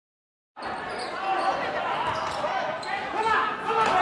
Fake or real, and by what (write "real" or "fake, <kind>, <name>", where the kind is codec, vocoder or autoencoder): real